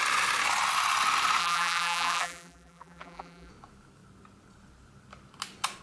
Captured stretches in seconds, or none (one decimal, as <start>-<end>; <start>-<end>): 0.0-1.4; 3.5-5.8